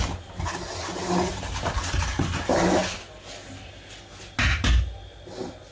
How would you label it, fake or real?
real